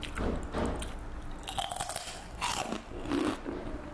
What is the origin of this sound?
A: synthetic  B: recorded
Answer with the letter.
B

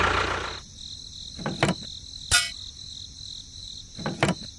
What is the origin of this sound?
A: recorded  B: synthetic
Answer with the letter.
A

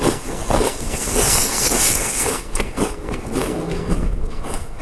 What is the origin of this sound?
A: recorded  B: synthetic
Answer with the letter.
B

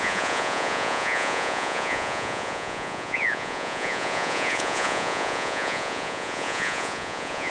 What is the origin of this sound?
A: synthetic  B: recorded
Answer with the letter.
A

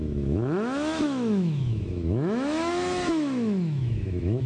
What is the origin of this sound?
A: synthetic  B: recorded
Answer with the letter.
A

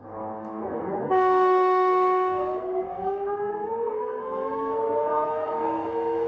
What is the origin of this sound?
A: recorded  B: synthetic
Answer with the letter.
B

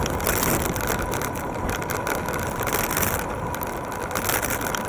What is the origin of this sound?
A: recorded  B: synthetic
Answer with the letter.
A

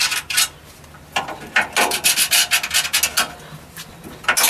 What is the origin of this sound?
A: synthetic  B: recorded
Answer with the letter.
B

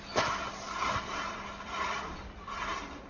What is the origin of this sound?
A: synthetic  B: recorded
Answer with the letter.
A